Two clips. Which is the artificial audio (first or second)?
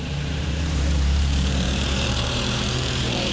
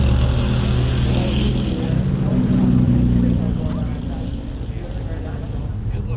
first